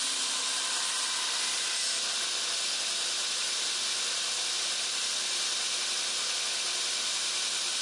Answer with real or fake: real